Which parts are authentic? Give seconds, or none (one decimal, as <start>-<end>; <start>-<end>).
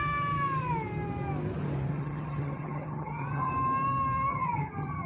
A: 0.0-1.9; 3.5-4.3